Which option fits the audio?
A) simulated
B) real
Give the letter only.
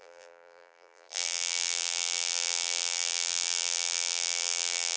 A